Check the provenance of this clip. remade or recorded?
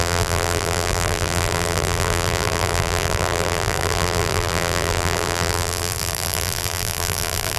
remade